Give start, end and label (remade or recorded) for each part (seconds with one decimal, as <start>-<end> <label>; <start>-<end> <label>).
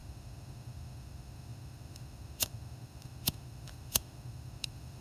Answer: 0.0-5.0 remade